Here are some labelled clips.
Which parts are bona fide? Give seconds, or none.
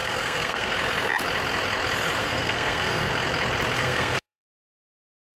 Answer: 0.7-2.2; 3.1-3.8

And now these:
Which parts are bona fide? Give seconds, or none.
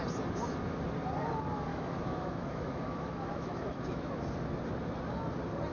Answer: 0.0-1.7; 4.1-5.7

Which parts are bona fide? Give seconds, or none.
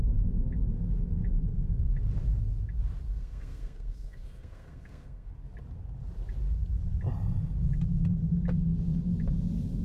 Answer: 0.0-3.1; 5.3-9.8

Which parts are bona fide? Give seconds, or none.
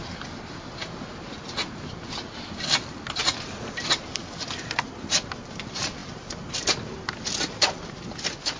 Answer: 0.0-8.6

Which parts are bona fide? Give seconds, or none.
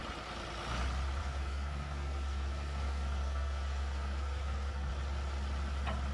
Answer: 0.0-1.2; 4.9-6.1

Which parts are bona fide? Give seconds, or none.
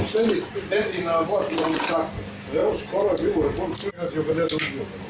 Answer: 0.0-0.5; 2.1-5.1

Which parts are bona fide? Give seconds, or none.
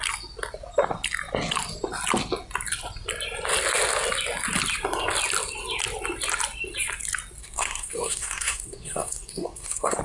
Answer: 0.0-7.4